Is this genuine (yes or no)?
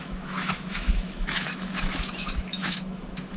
no